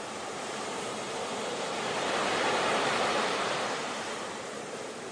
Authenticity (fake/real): fake